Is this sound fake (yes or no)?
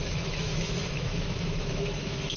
yes